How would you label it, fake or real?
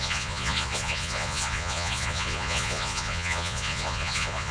fake